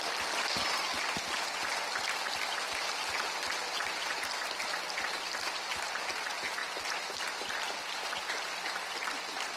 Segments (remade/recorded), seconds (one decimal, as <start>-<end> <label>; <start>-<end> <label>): 0.0-9.6 recorded